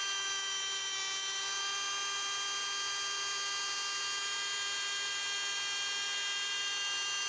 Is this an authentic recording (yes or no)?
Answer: yes